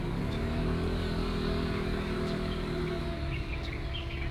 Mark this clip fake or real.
fake